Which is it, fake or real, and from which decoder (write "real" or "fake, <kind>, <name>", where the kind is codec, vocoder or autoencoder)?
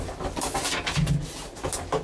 real